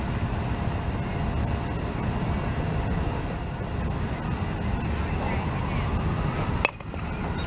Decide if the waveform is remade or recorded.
recorded